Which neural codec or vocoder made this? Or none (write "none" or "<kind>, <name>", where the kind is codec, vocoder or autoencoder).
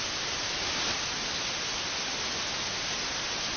none